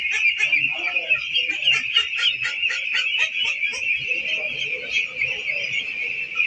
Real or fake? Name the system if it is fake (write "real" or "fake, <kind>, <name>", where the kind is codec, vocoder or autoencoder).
real